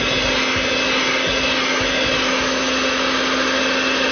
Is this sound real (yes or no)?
yes